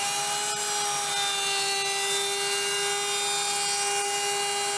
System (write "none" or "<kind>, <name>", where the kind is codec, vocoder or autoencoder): none